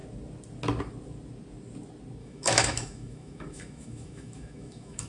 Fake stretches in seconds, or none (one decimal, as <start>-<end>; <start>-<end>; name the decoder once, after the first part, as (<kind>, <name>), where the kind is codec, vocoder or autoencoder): 2.2-5.1 (autoencoder, DAC-VAE)